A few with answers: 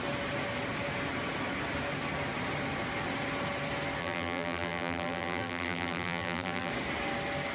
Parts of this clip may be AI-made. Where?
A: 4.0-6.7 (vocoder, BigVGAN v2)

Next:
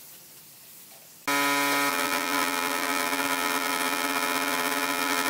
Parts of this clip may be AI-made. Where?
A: 1.9-5.3 (vocoder, BigVGAN v2)

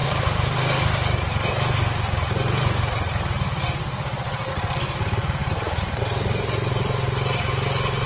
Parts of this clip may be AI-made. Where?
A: 5.4-6.0 (vocoder, BigVGAN v2)

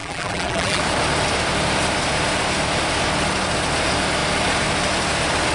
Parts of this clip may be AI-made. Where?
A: 0.0-0.8 (vocoder, BigVGAN v2)